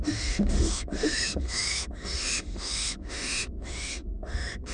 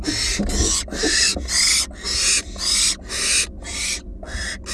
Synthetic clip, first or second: first